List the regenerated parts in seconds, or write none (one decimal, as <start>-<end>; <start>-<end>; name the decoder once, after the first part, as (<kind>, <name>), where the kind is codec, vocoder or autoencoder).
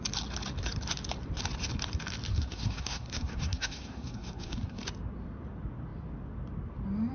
2.3-4.8 (codec, SNAC)